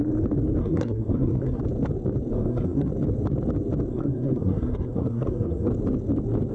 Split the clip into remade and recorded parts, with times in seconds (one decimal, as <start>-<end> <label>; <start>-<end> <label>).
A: 0.0-0.6 recorded; 0.6-1.6 remade; 1.6-2.3 recorded; 2.3-2.9 remade; 2.9-3.9 recorded; 3.9-5.7 remade; 5.7-6.5 recorded